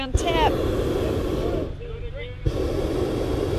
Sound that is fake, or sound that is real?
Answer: real